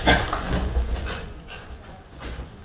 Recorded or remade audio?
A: remade